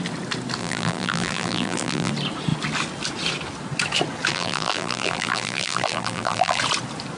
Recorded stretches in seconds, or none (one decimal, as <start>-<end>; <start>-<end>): 0.0-0.6; 2.1-4.3; 6.6-7.2